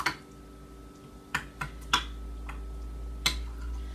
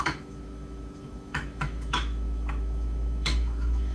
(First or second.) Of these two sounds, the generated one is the second